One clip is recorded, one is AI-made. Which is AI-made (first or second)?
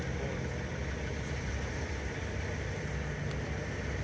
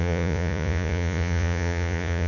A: second